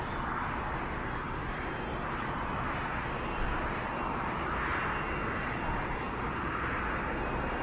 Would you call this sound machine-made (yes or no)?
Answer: no